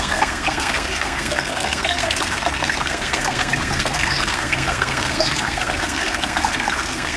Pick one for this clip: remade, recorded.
remade